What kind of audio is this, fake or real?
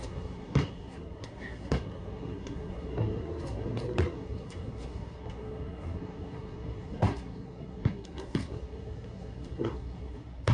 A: fake